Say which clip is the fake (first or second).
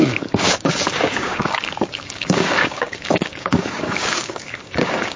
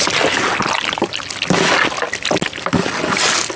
first